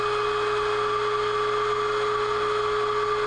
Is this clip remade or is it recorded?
recorded